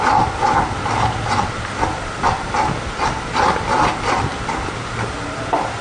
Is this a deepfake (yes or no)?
no